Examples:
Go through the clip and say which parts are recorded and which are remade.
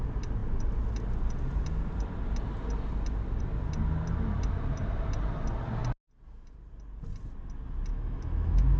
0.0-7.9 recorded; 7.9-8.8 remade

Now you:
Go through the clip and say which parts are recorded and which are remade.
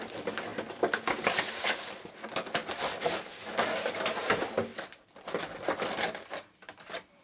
0.0-7.2 recorded